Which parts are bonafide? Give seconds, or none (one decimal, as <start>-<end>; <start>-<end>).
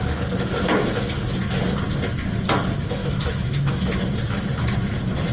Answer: 0.0-3.0; 4.0-5.3